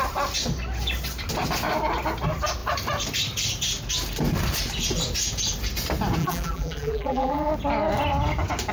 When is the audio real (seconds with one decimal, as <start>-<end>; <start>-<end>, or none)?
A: 0.0-6.2; 7.5-8.7